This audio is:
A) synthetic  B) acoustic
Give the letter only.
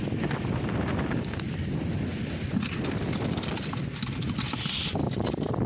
B